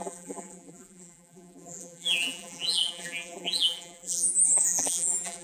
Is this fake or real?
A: fake